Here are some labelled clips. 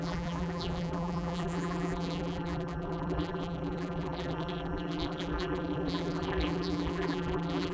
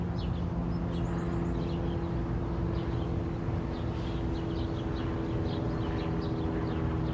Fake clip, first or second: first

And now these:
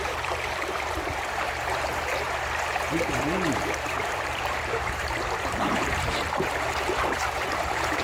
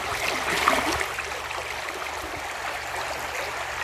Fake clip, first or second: first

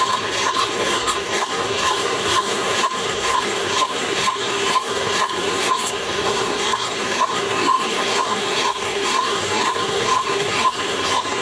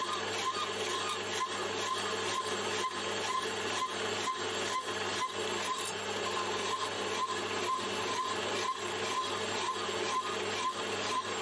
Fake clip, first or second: first